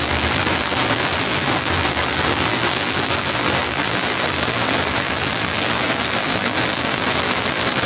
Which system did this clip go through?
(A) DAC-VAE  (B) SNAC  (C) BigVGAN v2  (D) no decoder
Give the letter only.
C